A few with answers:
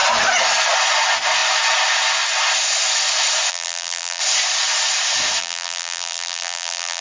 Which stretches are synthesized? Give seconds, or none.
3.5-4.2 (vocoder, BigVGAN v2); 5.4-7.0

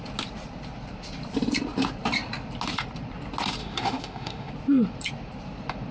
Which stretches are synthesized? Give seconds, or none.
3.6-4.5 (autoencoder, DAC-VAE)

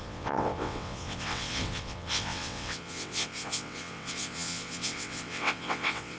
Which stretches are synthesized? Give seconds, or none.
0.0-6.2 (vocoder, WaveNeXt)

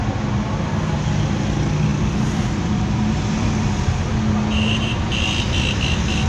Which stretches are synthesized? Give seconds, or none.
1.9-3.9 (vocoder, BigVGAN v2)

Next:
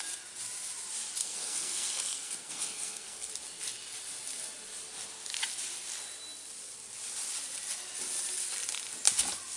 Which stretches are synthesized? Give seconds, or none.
1.2-3.3 (codec, SNAC)

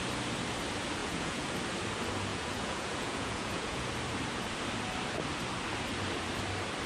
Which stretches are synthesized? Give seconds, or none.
1.0-1.5 (vocoder, Vocos); 2.3-3.9

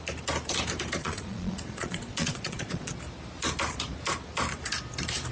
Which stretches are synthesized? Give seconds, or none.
1.0-2.9 (vocoder, Vocos)

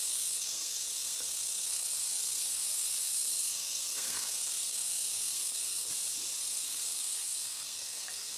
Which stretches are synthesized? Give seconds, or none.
0.0-5.9 (codec, SNAC); 6.4-8.4